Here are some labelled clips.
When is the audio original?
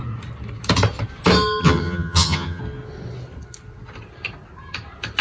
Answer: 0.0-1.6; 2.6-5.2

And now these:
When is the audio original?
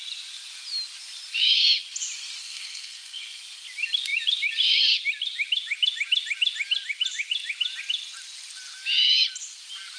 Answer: 0.0-2.4; 3.4-10.0